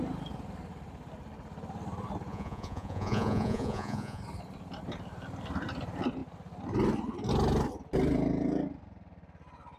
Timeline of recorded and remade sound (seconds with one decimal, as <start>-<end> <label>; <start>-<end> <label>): 0.0-2.3 recorded; 2.3-4.2 remade; 4.2-9.8 recorded